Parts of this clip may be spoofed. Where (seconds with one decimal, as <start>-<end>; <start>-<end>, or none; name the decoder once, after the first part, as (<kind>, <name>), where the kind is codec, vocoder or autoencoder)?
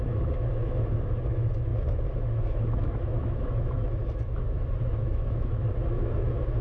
0.0-6.6 (autoencoder, DAC-VAE)